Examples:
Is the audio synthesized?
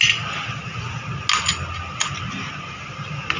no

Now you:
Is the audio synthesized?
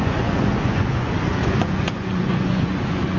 yes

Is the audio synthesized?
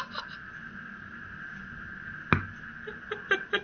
no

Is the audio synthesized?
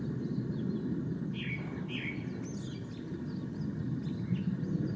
no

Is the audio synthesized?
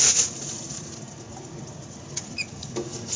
yes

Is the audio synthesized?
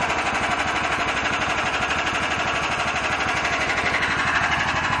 yes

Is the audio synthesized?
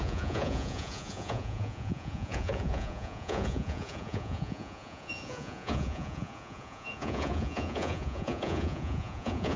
yes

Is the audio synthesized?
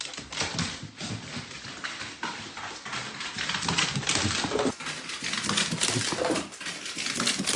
no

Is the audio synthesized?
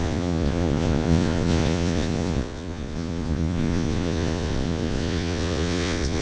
yes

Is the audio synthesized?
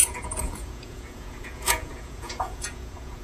yes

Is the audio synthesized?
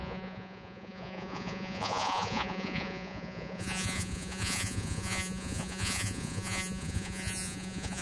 yes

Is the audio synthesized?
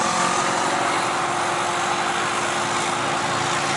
no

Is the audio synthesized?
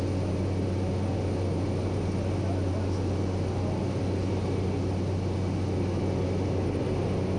no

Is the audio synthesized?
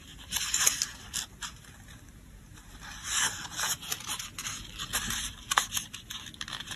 no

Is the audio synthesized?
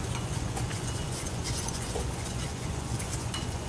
yes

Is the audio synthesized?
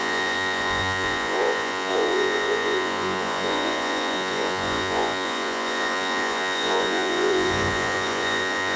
yes